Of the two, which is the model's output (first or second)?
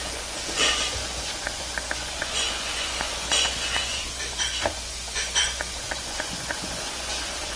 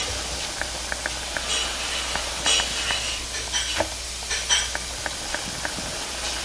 first